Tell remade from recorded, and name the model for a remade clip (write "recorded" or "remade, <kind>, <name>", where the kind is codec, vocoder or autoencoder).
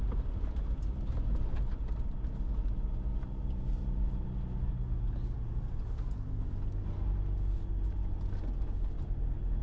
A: recorded